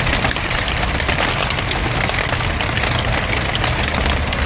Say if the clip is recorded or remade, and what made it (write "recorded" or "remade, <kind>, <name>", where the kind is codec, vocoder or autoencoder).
recorded